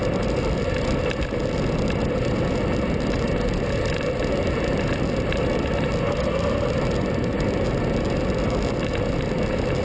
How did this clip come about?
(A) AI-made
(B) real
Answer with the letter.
B